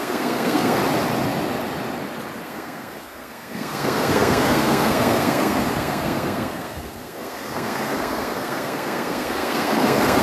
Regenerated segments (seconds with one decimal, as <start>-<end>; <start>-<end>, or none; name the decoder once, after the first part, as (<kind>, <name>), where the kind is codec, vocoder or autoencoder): 0.0-0.8 (codec, SNAC); 2.4-10.2